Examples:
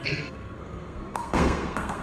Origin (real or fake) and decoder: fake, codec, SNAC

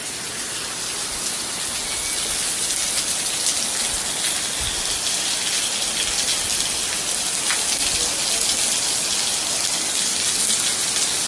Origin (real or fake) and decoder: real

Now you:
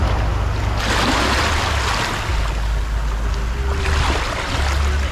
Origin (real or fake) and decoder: real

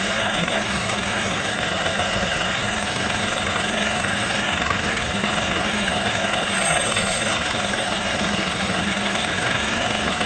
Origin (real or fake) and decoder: fake, codec, SNAC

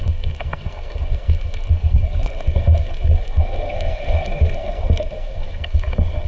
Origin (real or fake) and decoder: fake, codec, SNAC